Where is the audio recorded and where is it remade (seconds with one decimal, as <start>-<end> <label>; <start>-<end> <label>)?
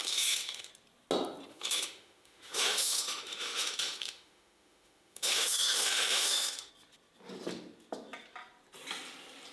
0.0-0.7 remade; 0.7-1.5 recorded; 1.5-6.7 remade; 6.7-9.5 recorded